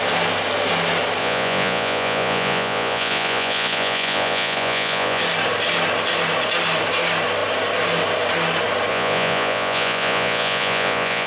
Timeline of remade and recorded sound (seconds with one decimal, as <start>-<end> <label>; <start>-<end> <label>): 0.0-1.2 recorded; 1.2-5.2 remade; 5.2-8.9 recorded; 8.9-11.3 remade